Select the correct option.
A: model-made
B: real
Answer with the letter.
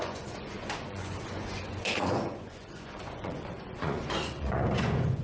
A